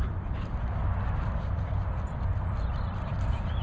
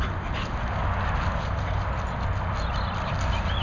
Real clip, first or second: second